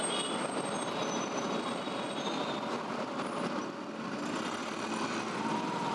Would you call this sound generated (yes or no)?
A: no